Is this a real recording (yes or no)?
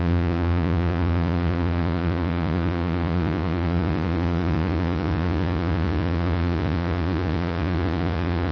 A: no